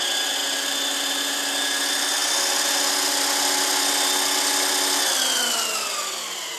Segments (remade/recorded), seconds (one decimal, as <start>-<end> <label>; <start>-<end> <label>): 0.0-6.6 recorded